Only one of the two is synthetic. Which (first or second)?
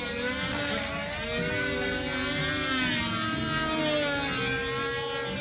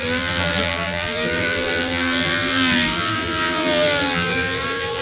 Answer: second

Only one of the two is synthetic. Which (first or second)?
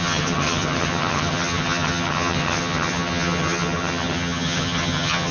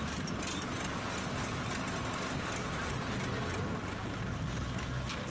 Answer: first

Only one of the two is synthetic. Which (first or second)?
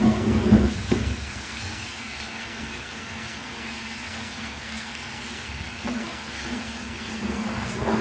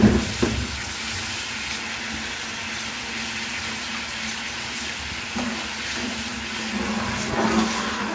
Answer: first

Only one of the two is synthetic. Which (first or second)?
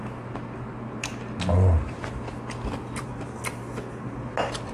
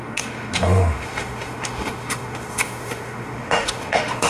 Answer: second